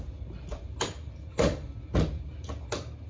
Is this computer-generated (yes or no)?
no